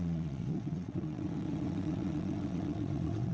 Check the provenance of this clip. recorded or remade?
remade